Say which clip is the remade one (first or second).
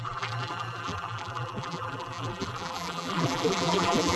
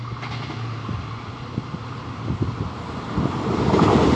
first